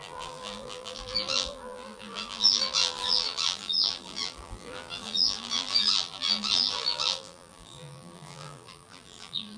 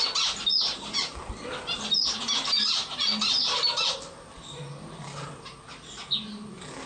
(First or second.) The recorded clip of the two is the second